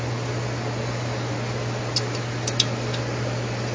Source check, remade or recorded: recorded